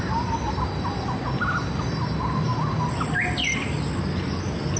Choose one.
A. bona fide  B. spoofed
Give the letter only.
A